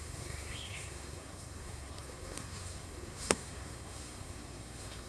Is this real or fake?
fake